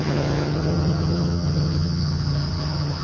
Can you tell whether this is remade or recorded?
remade